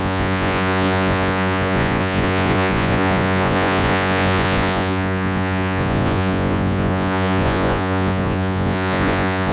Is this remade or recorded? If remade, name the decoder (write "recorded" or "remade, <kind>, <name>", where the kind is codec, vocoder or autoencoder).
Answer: remade, vocoder, Vocos